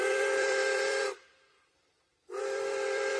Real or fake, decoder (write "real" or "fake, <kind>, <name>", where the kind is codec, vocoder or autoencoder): fake, vocoder, BigVGAN v2